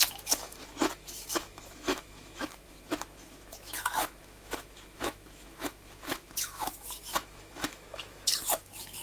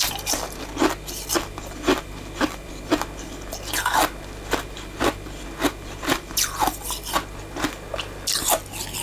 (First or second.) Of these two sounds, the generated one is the first